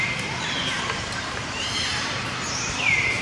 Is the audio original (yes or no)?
no